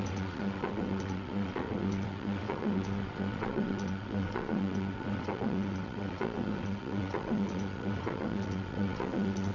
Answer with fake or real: fake